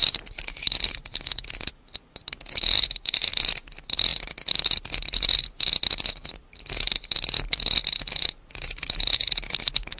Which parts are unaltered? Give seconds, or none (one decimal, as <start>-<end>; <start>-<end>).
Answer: 0.9-4.1; 4.9-10.0